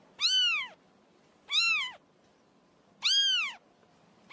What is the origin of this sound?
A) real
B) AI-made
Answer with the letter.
A